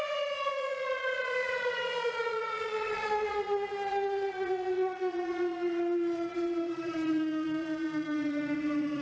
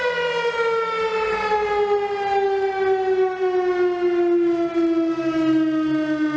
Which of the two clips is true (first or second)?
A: second